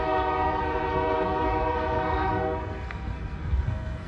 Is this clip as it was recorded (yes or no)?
no